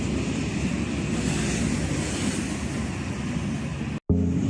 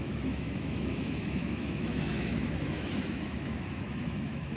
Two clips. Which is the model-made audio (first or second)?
second